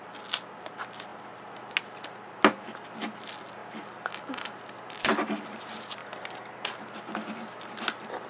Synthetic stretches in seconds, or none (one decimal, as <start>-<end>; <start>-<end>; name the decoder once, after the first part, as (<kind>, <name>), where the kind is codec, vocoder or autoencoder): 1.1-1.7 (vocoder, BigVGAN v2)